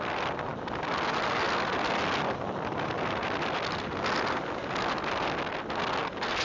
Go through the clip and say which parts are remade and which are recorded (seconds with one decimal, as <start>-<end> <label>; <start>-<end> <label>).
0.0-6.4 recorded